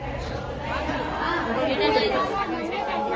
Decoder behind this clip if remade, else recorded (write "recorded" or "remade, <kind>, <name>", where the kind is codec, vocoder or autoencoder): recorded